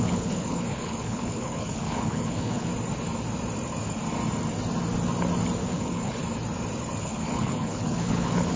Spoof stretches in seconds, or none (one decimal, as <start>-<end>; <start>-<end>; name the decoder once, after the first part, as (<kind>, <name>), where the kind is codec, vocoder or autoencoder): 0.0-2.7 (codec, HILCodec); 5.7-6.2; 7.0-8.6